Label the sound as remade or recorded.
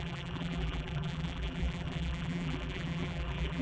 remade